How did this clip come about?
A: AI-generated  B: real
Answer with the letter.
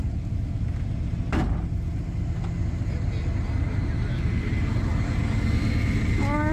B